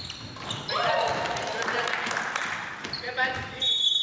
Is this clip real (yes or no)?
yes